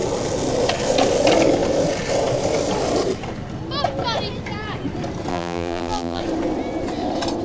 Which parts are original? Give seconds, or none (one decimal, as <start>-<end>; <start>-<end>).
0.0-5.3; 6.2-7.4